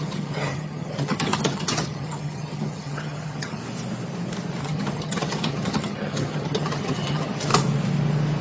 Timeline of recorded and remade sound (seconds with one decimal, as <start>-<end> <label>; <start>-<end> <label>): 0.0-3.6 remade; 3.6-4.6 recorded; 4.6-7.5 remade; 7.5-8.4 recorded